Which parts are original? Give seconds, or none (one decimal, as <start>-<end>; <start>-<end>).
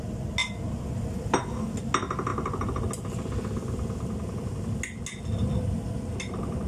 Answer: 0.0-6.7